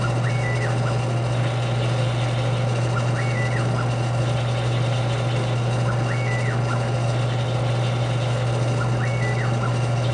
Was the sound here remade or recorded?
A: recorded